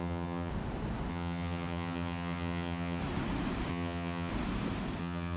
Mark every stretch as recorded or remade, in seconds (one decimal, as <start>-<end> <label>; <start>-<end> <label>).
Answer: 0.0-0.5 remade; 0.5-1.1 recorded; 1.1-3.0 remade; 3.0-3.7 recorded; 3.7-4.3 remade; 4.3-5.0 recorded; 5.0-5.4 remade